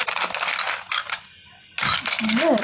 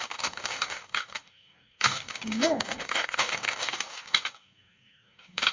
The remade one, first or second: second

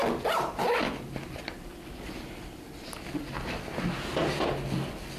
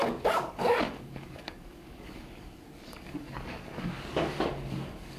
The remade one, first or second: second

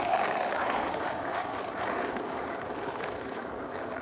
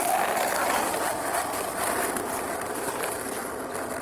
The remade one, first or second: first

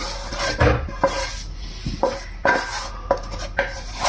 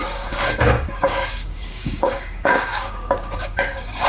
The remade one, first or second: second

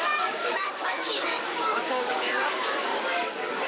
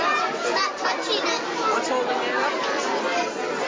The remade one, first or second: first